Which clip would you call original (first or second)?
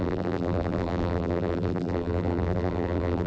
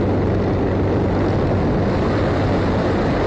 second